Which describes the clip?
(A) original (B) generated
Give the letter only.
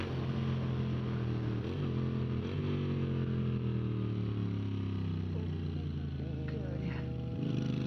A